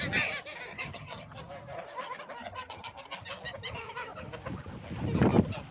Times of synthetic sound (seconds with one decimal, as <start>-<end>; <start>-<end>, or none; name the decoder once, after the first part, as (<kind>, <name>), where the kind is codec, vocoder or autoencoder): 0.7-1.4 (vocoder, HiFi-GAN); 2.4-2.9